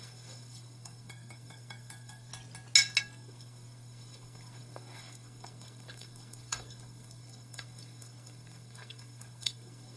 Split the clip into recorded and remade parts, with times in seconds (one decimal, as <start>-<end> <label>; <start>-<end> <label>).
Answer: 0.0-2.3 remade; 2.3-3.0 recorded; 3.0-10.0 remade